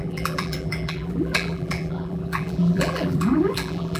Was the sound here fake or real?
fake